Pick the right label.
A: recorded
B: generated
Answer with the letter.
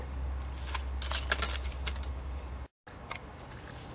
A